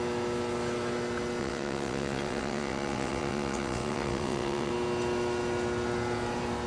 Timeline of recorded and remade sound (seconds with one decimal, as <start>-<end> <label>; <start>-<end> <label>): 0.0-1.4 recorded; 1.4-4.7 remade; 4.7-6.7 recorded